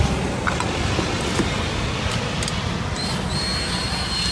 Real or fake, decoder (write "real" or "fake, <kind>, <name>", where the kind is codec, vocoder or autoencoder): real